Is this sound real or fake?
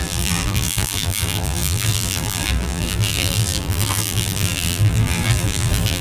fake